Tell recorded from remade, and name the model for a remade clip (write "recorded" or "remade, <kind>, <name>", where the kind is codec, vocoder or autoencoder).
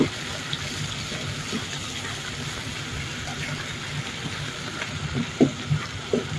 recorded